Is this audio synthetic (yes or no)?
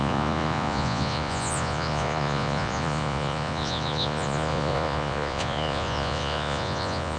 yes